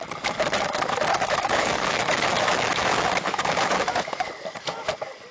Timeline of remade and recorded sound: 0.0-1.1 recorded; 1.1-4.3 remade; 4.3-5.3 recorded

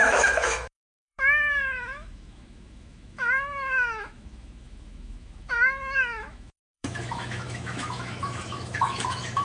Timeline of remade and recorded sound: 0.0-9.4 remade

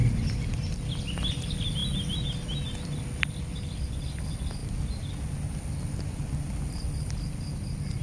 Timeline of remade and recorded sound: 0.0-8.0 recorded

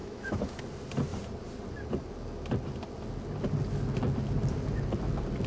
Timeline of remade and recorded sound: 0.0-0.6 remade; 0.6-5.5 recorded